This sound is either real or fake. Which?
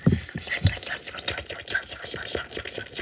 real